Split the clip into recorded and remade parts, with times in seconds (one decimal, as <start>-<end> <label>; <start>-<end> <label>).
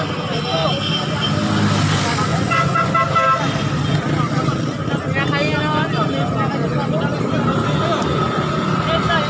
0.0-2.3 recorded; 2.3-2.9 remade; 2.9-9.3 recorded